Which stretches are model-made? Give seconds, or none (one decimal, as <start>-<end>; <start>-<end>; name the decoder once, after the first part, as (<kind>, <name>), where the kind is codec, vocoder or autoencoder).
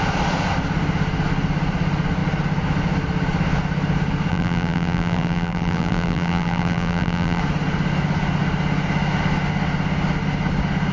4.3-7.4 (vocoder, BigVGAN v2)